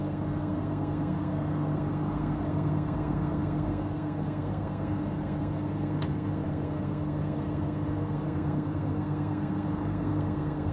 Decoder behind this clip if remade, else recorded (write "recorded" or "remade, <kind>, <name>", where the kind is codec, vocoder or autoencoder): remade, codec, SNAC